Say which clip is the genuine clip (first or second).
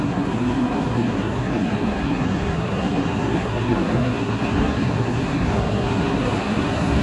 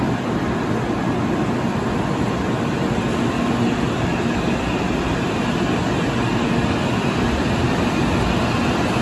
second